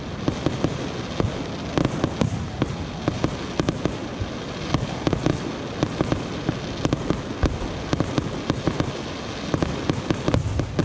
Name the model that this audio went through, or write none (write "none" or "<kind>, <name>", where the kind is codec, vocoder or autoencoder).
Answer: none